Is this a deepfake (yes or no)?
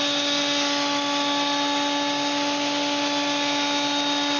no